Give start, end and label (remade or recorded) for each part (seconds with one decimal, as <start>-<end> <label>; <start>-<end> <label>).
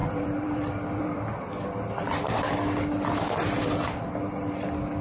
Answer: 0.0-1.2 remade; 1.2-5.0 recorded